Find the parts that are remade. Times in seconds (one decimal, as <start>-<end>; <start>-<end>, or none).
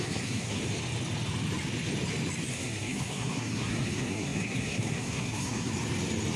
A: 0.0-0.6; 2.5-5.7